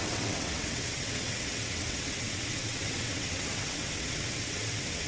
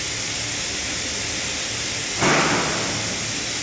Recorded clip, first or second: second